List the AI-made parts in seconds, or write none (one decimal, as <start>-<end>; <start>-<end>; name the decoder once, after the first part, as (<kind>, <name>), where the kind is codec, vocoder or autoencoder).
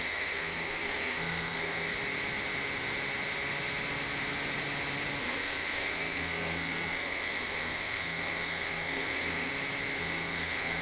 0.0-1.9 (codec, SNAC); 5.2-9.5; 10.0-10.8